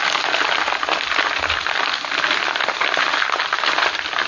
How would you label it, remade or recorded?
recorded